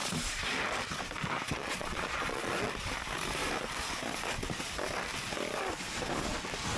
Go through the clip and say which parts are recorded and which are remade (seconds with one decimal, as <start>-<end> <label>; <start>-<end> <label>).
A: 0.0-1.5 recorded; 1.5-2.5 remade; 2.5-6.8 recorded